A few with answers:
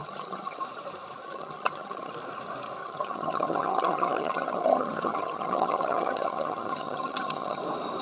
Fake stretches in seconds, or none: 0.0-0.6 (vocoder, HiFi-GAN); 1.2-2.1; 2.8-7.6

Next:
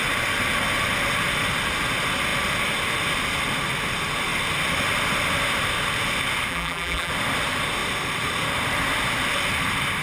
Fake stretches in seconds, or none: 6.5-7.1 (vocoder, BigVGAN v2)

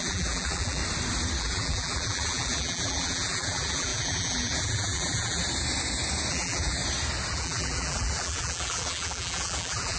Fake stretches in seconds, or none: 0.0-0.8 (vocoder, BigVGAN v2); 1.4-5.4; 6.3-6.8; 7.3-10.0

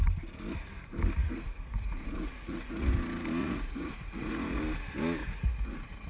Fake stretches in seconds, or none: 1.2-2.9 (vocoder, Vocos); 3.4-4.6; 5.2-6.1